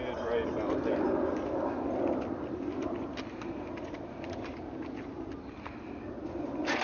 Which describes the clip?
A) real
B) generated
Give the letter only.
A